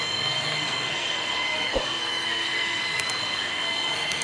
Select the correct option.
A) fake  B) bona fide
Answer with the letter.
A